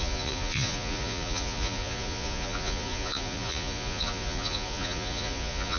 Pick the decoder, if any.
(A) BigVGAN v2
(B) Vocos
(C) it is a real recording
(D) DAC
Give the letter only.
B